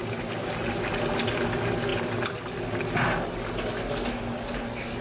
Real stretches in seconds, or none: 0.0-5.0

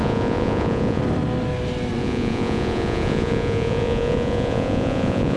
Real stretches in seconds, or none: 1.0-2.0